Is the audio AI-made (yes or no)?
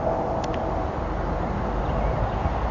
no